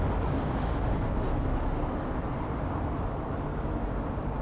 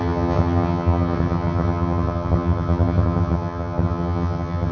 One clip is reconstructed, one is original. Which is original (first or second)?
first